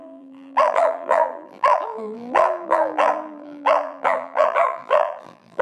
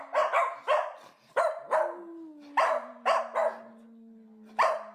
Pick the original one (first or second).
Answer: second